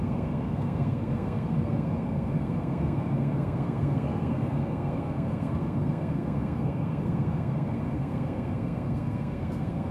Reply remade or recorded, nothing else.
remade